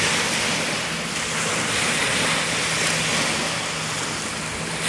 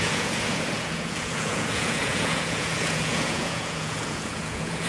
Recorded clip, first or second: first